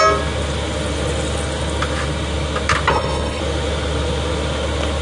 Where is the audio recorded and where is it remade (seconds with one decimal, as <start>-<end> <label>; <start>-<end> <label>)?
0.0-2.9 recorded; 2.9-3.4 remade; 3.4-5.0 recorded